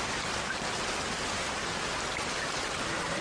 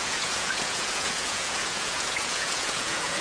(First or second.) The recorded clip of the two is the first